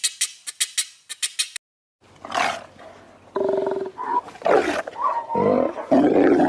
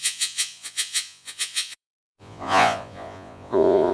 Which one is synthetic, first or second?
second